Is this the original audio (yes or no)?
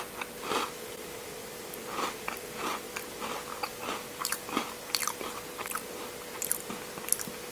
yes